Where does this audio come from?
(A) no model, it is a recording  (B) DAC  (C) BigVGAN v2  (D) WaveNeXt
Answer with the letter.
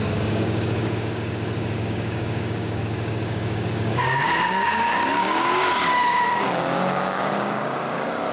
B